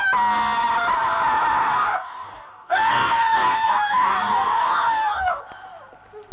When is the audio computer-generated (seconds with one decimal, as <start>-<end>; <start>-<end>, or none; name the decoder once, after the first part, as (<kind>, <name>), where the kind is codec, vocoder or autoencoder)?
1.6-5.4 (codec, DAC)

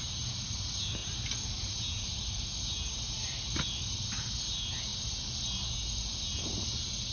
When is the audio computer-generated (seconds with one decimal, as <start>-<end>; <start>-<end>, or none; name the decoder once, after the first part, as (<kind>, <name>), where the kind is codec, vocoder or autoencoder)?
none

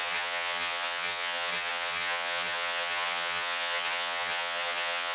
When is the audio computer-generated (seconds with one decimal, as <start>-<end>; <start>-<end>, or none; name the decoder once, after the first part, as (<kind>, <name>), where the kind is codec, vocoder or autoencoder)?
0.0-5.1 (vocoder, HiFi-GAN)

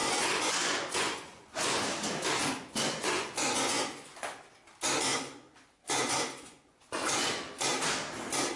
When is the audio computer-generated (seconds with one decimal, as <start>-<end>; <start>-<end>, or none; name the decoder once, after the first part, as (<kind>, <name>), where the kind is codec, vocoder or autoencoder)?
0.0-1.8 (vocoder, Vocos); 2.4-4.4; 5.1-7.5

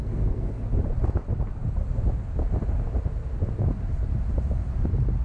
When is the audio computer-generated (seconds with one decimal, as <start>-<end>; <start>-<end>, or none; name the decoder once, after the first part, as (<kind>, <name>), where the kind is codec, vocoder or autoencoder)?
0.0-0.6 (codec, SNAC)